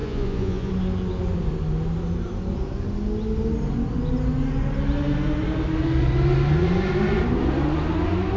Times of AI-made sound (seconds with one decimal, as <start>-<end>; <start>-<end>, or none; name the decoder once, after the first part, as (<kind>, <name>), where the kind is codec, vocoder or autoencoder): 0.0-0.7 (vocoder, Vocos)